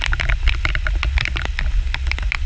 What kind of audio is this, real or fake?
real